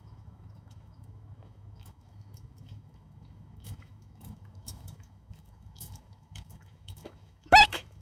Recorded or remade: remade